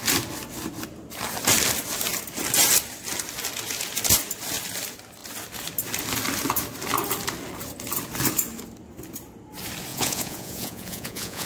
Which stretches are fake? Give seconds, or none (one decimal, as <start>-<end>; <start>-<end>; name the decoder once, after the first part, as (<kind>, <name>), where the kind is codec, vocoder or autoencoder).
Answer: 9.9-11.5 (vocoder, Vocos)

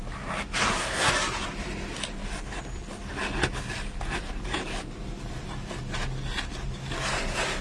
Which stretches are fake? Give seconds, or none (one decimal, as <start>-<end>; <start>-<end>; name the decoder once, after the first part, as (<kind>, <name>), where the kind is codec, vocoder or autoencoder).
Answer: 0.6-1.1 (codec, SNAC)

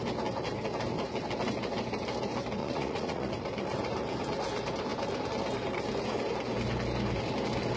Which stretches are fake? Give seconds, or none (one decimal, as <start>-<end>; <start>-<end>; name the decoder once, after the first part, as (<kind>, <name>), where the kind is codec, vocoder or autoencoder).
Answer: 2.6-3.3 (vocoder, Vocos)

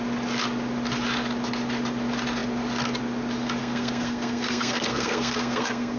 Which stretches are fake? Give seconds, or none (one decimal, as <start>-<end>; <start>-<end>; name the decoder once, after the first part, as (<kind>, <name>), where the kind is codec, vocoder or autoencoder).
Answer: 3.6-6.0 (codec, SNAC)

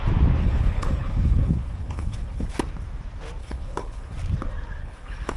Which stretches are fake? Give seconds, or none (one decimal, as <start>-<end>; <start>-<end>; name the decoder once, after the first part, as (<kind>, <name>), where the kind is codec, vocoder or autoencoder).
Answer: 0.4-2.5 (codec, HILCodec); 3.4-4.1; 4.8-5.4

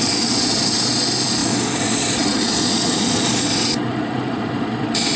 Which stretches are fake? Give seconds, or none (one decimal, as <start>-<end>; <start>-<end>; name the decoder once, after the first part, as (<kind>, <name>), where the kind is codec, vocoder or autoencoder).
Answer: 0.0-5.2 (vocoder, Vocos)

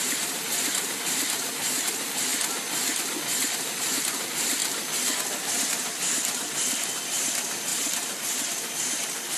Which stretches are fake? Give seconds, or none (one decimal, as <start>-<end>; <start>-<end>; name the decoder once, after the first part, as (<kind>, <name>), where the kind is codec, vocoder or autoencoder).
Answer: 0.0-2.3 (vocoder, BigVGAN v2); 3.8-4.6; 5.5-9.4

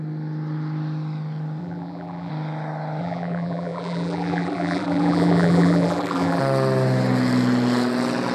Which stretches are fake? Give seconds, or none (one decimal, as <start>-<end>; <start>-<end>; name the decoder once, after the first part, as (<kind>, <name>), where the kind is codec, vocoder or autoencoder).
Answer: 1.6-2.3 (vocoder, BigVGAN v2); 3.0-6.4